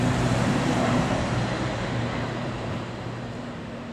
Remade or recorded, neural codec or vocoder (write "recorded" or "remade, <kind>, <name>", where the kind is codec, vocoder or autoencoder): remade, vocoder, BigVGAN v2